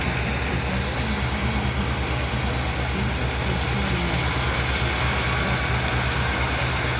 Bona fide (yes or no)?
yes